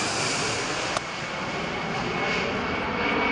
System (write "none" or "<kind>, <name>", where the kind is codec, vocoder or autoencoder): none